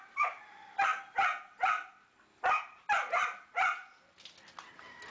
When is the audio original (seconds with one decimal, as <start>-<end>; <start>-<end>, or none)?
0.0-5.1